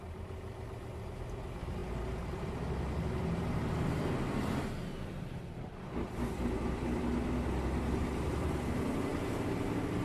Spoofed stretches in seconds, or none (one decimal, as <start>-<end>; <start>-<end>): none

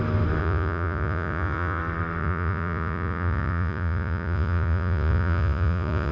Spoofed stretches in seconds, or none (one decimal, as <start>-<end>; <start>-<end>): 0.4-1.8; 2.2-6.1

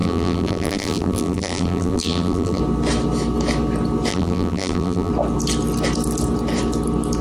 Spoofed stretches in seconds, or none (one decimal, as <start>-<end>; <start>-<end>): 0.0-2.6; 4.1-5.1

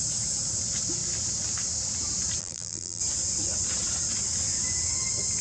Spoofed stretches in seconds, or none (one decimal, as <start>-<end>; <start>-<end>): 2.4-3.0

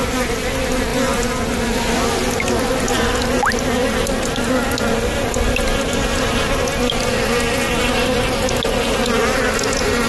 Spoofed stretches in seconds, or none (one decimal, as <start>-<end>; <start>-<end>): none

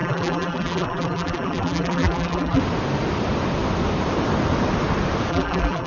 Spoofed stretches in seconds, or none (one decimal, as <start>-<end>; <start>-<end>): 0.0-2.6; 5.3-5.9

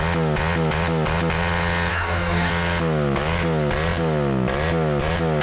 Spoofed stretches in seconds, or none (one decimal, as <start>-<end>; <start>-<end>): 1.9-2.5

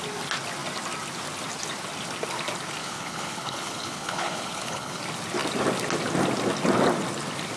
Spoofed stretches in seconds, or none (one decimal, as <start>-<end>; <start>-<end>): 2.8-5.0